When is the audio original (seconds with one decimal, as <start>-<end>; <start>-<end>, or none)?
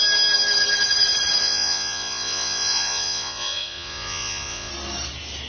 0.0-1.4; 4.7-5.5